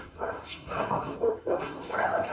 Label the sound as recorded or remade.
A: remade